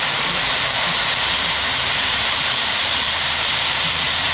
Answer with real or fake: fake